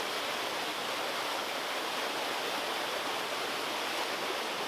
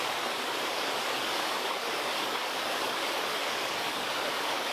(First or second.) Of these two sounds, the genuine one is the first